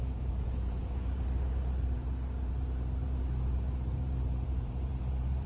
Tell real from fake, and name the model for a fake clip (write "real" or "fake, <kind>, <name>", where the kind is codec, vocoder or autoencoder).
fake, vocoder, BigVGAN v2